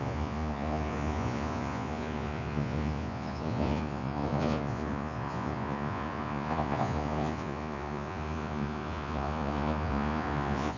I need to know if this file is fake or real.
fake